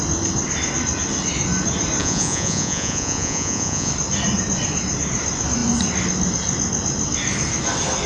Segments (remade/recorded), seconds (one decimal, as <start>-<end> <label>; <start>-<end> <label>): 0.0-2.0 recorded; 2.0-3.9 remade; 3.9-8.1 recorded